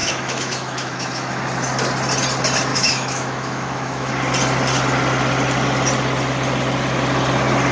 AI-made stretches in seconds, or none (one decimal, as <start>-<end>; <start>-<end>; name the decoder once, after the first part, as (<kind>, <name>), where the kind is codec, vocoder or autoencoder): 0.0-1.4 (autoencoder, DAC-VAE); 2.7-4.1